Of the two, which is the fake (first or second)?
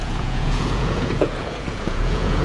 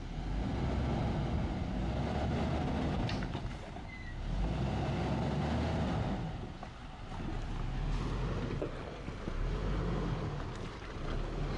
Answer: first